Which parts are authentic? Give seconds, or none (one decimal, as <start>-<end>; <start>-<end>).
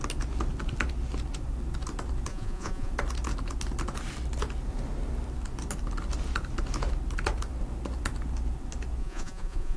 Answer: 0.0-2.3; 2.9-9.0